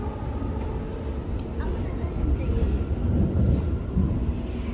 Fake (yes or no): no